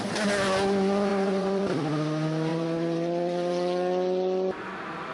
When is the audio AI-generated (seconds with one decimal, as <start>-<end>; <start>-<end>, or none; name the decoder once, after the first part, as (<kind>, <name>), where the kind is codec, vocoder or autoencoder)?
1.1-1.6 (vocoder, Vocos); 2.5-3.5